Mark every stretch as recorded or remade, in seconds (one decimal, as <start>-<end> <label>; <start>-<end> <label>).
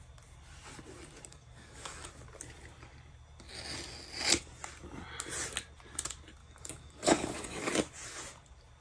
0.0-1.3 recorded; 1.3-2.1 remade; 2.1-6.4 recorded; 6.4-7.7 remade; 7.7-8.8 recorded